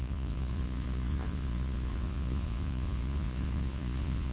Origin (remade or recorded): remade